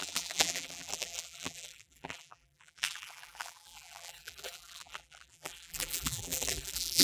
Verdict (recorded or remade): remade